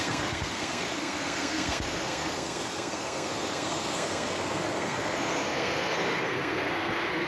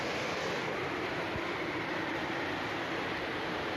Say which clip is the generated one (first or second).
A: first